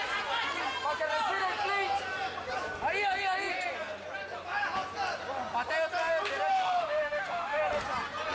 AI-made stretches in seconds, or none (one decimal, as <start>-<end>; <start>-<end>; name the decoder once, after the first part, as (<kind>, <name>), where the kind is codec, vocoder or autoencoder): 6.5-7.6 (autoencoder, DAC-VAE)